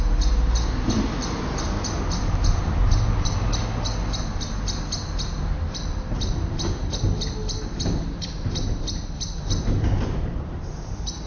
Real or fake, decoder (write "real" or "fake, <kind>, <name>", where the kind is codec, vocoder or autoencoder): real